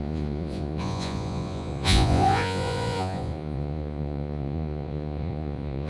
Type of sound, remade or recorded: remade